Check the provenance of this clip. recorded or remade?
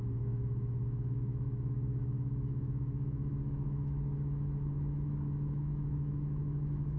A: remade